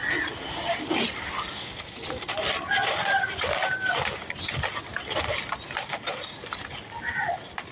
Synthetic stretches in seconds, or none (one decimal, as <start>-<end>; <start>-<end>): none